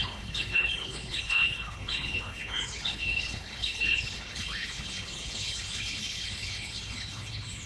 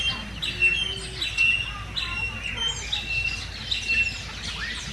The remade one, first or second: first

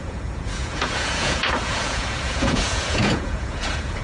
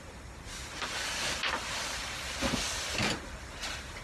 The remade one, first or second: first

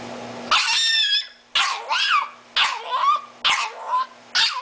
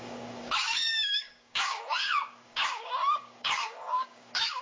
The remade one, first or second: second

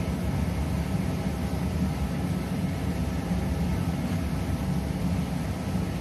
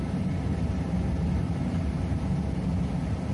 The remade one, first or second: second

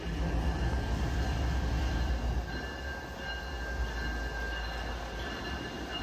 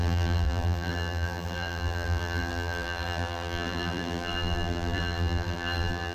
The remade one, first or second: second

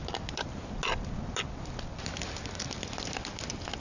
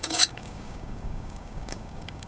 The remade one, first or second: second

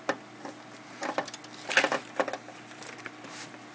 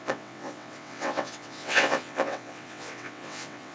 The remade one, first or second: second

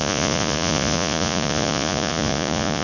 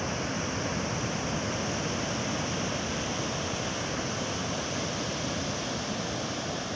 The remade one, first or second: first